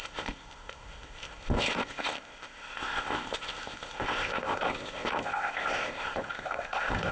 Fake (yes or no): yes